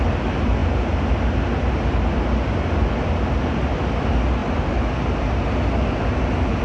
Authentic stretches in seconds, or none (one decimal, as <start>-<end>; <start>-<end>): 0.0-6.6